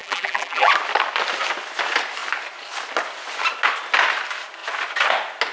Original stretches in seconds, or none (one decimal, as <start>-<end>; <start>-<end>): 0.7-5.5